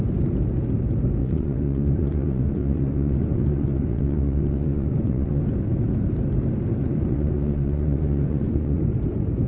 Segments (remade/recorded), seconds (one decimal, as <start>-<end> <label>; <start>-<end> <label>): 0.0-1.2 recorded; 1.2-5.4 remade; 5.4-6.8 recorded; 6.8-8.8 remade; 8.8-9.5 recorded